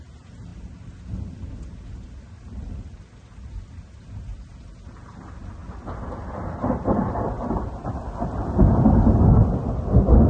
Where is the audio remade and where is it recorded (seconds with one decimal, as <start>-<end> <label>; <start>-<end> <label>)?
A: 0.0-10.3 recorded

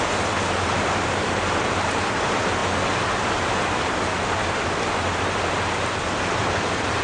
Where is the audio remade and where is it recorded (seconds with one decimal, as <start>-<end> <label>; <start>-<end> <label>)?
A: 0.0-7.0 recorded